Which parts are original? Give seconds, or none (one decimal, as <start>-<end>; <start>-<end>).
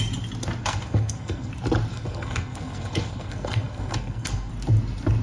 0.0-0.6; 1.5-1.9; 4.5-5.2